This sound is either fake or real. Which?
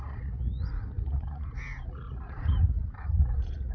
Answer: fake